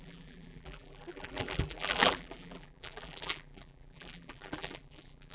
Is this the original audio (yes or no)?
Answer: no